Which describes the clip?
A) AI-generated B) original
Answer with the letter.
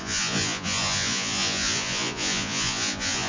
A